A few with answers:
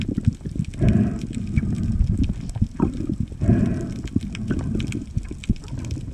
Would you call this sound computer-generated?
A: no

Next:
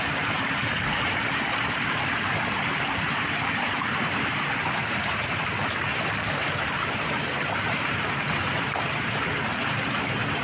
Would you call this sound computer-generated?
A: yes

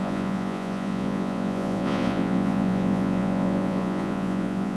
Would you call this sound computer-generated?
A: yes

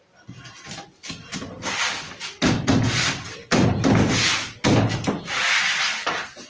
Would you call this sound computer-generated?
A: no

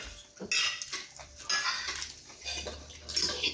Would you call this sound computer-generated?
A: no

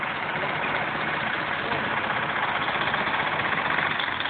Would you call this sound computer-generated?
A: no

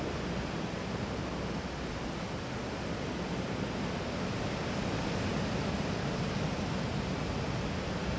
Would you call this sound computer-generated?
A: no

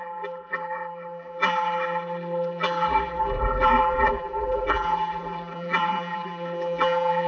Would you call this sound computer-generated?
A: yes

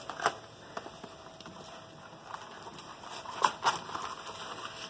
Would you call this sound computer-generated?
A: no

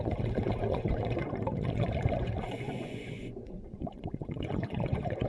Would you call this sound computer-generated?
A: yes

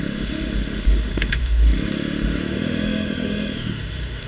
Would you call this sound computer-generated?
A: yes